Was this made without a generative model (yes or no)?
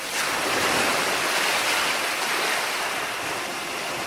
yes